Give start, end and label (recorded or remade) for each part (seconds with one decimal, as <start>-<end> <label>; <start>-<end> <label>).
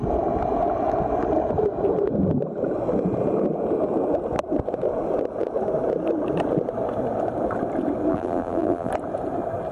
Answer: 0.0-8.1 recorded; 8.1-8.9 remade; 8.9-9.7 recorded